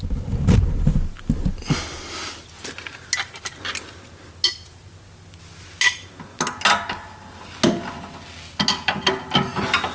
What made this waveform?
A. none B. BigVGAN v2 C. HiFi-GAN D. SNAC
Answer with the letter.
A